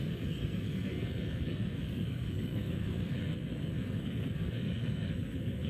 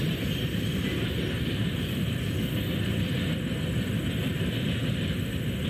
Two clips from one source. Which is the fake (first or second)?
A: first